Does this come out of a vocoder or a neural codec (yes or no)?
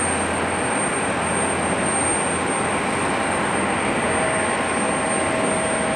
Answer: no